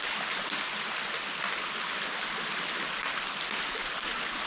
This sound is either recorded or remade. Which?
recorded